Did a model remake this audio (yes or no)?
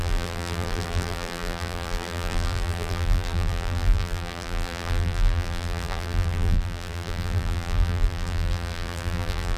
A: yes